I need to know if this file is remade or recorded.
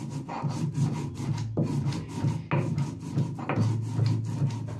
recorded